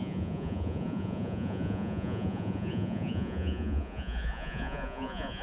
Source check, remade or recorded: remade